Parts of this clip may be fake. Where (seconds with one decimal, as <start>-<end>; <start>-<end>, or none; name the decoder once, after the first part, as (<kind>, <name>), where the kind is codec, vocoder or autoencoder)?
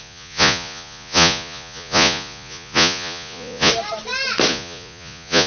0.0-3.7 (vocoder, Vocos); 4.5-5.5